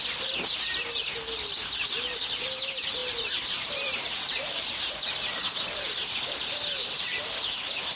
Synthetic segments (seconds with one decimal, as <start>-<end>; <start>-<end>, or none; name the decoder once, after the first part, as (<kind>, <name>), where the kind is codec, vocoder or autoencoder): 3.0-7.2 (vocoder, BigVGAN v2)